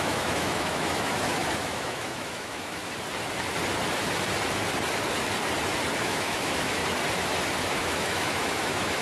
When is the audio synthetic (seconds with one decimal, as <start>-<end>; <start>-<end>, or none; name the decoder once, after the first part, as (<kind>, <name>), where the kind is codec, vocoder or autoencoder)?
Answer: 0.0-2.8 (autoencoder, DAC-VAE); 6.0-6.8; 7.7-9.0